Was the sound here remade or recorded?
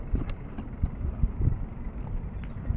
recorded